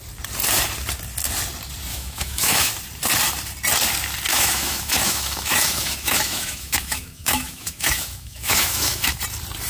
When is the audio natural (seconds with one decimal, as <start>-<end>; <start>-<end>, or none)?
0.0-1.9; 2.7-4.3; 9.2-9.7